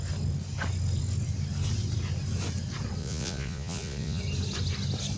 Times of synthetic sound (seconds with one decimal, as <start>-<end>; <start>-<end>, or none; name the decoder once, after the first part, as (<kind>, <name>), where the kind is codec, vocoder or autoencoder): 3.0-4.2 (vocoder, Vocos)